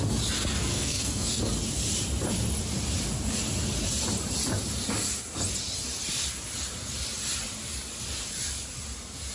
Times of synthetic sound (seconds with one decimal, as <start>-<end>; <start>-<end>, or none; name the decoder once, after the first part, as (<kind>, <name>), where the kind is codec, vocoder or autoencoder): 0.7-1.4 (codec, SNAC)